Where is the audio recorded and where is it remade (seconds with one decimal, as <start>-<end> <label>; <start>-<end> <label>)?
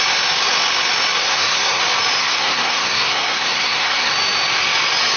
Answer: 0.0-1.2 recorded; 1.2-1.8 remade; 1.8-2.2 recorded; 2.2-4.1 remade; 4.1-5.2 recorded